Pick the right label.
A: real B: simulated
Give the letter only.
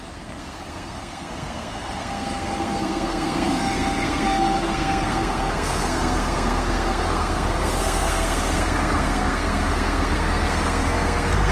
B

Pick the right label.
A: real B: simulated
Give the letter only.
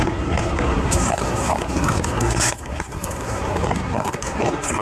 B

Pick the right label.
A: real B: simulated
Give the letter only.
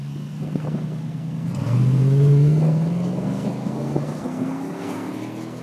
B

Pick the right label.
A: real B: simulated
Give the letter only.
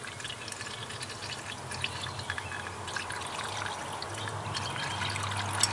A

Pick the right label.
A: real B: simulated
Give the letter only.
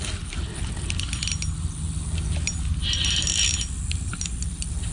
A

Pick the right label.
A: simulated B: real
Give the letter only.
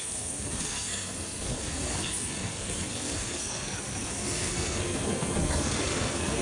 A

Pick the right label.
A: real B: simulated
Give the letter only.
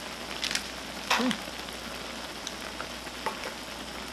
A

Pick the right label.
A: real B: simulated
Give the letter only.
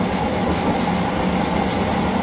A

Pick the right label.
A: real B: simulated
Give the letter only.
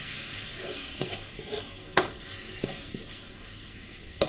B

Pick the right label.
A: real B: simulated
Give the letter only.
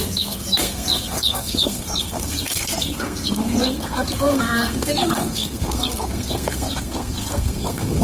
B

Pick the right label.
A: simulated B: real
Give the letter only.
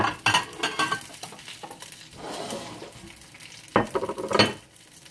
B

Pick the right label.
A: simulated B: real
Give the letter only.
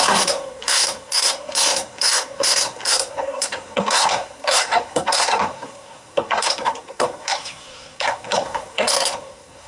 A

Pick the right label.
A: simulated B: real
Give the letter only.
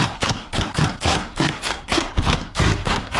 A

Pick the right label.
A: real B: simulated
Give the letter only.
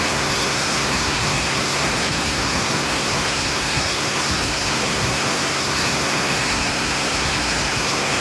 B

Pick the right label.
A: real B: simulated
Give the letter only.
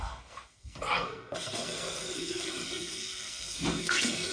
B